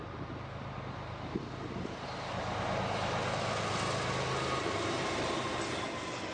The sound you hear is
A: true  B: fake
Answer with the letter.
A